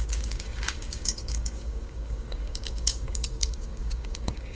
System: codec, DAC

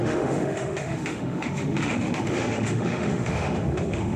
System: autoencoder, DAC-VAE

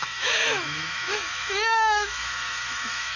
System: autoencoder, DAC-VAE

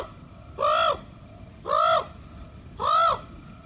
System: none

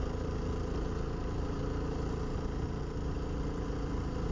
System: none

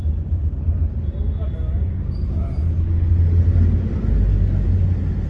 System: none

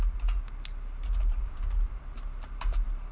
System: none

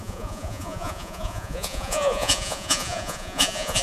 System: vocoder, Vocos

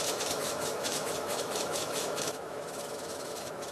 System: autoencoder, DAC-VAE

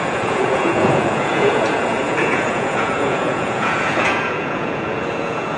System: vocoder, Vocos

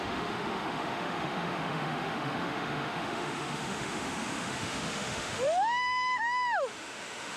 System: autoencoder, DAC-VAE